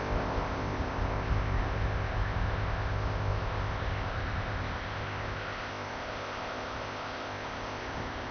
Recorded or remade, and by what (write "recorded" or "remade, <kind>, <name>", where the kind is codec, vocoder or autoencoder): remade, codec, ZipCodec